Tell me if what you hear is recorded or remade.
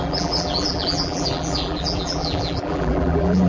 remade